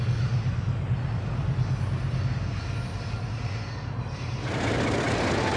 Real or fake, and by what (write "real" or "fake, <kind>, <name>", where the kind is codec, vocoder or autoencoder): real